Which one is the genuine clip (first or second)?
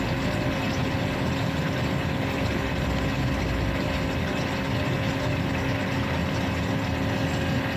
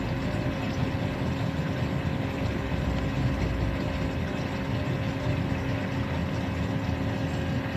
second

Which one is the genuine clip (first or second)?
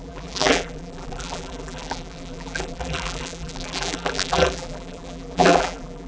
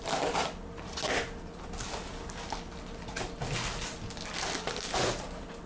second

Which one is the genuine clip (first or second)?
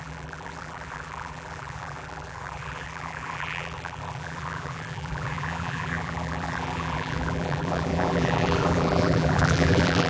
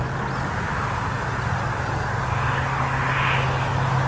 second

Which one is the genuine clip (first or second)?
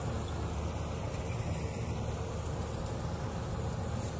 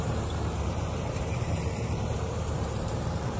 first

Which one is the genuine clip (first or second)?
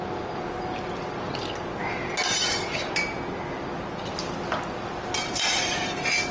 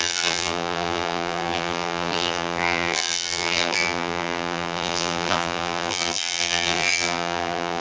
first